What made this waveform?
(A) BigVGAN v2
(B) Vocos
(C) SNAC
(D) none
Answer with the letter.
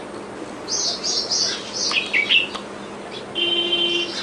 D